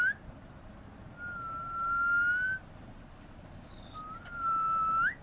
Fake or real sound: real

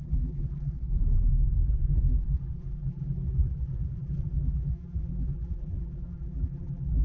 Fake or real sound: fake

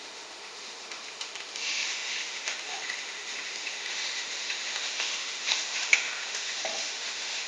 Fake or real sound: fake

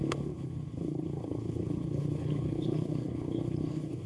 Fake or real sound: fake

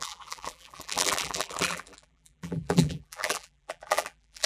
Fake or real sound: fake